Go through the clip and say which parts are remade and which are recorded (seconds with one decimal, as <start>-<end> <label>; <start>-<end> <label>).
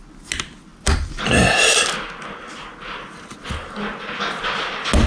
0.0-5.1 recorded